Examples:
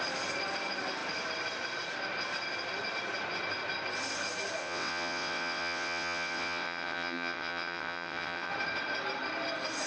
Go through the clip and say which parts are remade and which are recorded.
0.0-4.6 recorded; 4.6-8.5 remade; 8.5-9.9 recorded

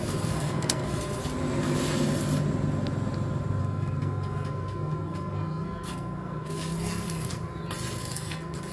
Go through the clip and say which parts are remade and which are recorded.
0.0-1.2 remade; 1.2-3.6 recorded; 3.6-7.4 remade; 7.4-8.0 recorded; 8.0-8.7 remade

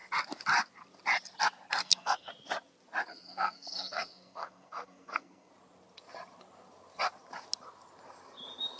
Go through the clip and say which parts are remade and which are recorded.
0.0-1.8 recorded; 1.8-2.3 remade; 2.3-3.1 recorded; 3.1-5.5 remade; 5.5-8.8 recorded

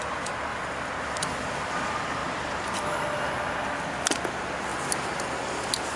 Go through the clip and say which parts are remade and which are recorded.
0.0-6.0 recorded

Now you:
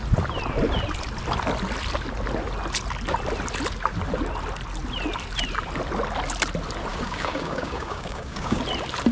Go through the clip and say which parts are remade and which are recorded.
0.0-6.9 recorded; 6.9-8.6 remade; 8.6-9.1 recorded

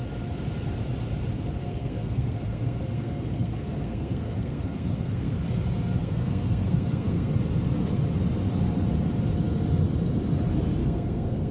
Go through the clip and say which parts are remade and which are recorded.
0.0-1.6 recorded; 1.6-5.4 remade; 5.4-6.0 recorded; 6.0-7.3 remade; 7.3-10.8 recorded; 10.8-11.5 remade